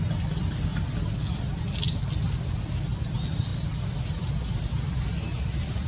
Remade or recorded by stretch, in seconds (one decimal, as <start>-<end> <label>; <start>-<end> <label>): 0.0-5.9 recorded